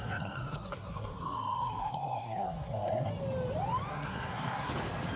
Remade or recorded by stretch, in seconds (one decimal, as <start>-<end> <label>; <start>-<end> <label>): 0.0-3.1 remade; 3.1-3.9 recorded; 3.9-4.7 remade; 4.7-5.2 recorded